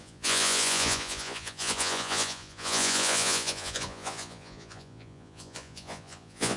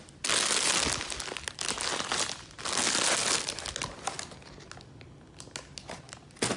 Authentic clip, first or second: second